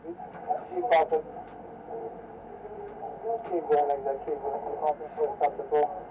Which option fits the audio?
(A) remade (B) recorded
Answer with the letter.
B